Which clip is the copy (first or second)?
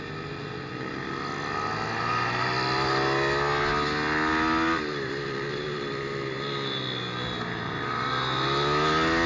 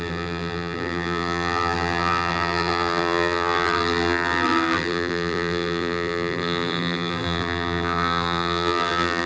second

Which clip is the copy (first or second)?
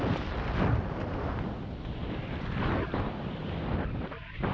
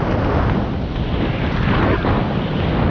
first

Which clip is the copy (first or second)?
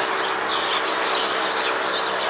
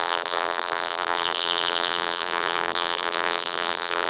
second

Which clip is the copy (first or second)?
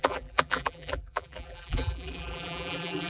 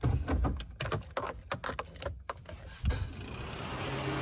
first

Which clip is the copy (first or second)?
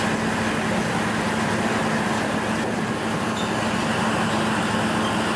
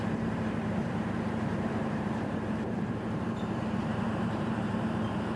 second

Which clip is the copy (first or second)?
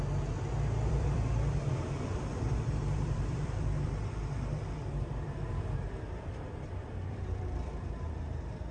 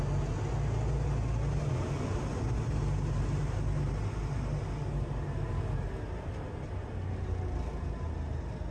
first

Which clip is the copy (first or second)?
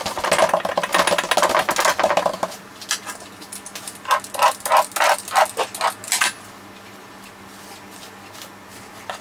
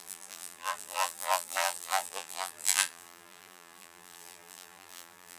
second